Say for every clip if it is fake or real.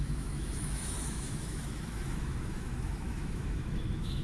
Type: fake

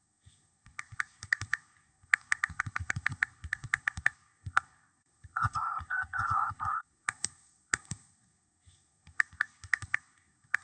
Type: fake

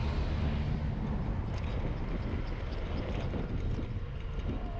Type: real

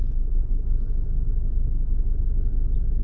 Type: real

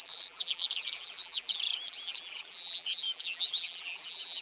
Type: fake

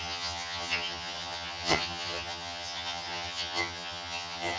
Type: fake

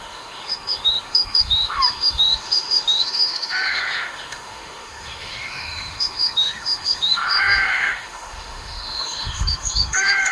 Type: fake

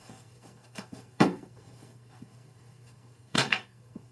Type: fake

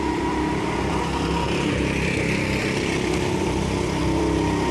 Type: fake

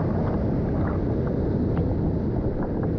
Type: real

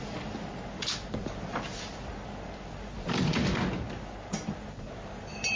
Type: fake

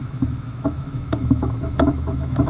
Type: fake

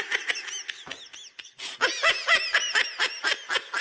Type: real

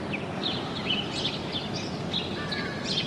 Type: real